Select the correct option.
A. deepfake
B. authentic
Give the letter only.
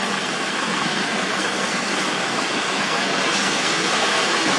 A